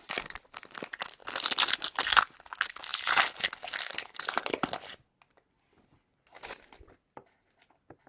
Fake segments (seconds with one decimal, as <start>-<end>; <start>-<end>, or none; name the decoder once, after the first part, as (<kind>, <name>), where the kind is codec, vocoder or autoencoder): none